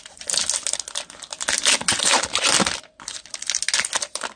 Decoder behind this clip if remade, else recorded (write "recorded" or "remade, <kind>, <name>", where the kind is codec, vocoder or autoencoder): recorded